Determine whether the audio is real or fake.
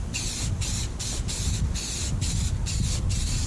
real